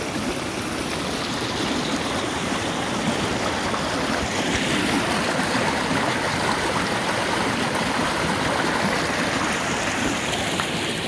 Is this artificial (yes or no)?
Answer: no